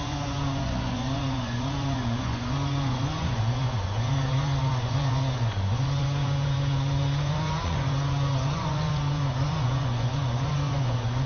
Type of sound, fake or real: fake